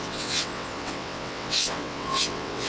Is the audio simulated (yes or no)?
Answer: yes